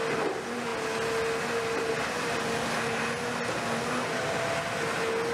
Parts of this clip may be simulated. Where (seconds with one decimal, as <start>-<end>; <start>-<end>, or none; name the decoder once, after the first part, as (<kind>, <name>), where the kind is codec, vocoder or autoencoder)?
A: none

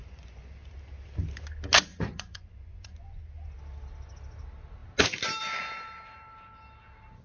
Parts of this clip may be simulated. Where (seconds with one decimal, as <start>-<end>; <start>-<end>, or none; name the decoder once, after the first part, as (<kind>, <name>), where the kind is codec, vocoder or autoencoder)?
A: 0.0-0.5 (vocoder, Vocos); 1.9-3.2

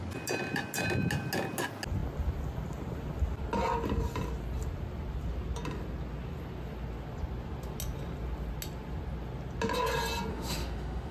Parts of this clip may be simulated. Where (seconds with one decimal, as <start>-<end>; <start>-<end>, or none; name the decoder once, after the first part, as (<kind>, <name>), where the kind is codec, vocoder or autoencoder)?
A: 10.3-11.1 (autoencoder, DAC-VAE)

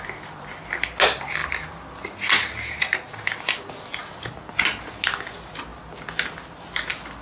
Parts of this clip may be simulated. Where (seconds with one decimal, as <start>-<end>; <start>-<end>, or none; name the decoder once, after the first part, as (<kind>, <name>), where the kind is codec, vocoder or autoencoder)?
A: none

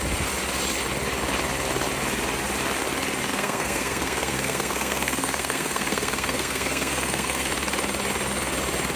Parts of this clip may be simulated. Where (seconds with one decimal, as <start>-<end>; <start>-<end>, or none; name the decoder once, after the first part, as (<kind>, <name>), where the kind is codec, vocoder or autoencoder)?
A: 3.3-7.5 (codec, SNAC)

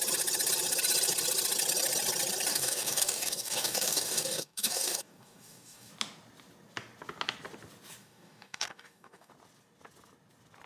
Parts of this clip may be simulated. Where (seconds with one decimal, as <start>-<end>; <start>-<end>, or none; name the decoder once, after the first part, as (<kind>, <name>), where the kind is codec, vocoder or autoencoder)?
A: 2.5-5.9 (codec, DAC); 8.0-9.3